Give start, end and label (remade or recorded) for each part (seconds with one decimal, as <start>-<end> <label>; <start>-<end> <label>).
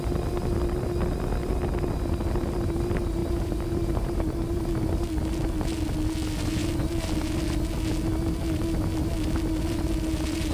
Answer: 0.0-3.2 recorded; 3.2-4.6 remade; 4.6-10.5 recorded